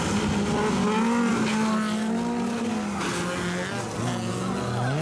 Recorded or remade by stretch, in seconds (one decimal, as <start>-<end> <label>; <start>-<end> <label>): 0.0-5.0 recorded